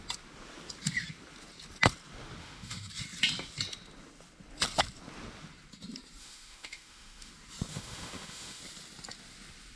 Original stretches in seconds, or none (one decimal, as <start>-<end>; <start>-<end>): 0.0-2.4; 2.9-6.2; 7.3-7.7; 8.6-9.8